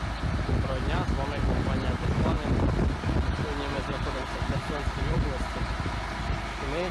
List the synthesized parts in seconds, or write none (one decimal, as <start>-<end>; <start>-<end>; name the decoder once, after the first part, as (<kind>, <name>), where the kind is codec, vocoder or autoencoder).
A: 3.7-5.4 (vocoder, BigVGAN v2)